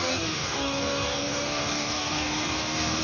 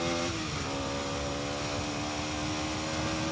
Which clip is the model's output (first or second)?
first